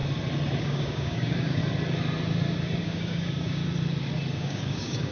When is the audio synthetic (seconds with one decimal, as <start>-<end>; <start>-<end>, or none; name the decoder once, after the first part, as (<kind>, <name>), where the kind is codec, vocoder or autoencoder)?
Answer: 0.6-1.6 (codec, DAC); 2.8-3.6; 4.3-5.1